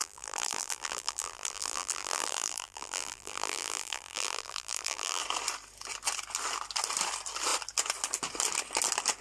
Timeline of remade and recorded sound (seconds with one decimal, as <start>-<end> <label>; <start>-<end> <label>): 0.0-5.2 remade; 5.2-9.2 recorded